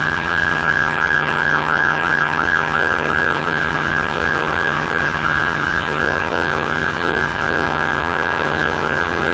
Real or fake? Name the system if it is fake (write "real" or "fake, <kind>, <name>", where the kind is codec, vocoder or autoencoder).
fake, vocoder, HiFi-GAN